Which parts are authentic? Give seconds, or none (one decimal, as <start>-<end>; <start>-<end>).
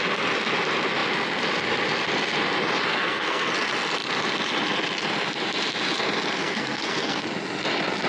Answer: 0.0-2.9; 3.5-6.4; 7.2-8.1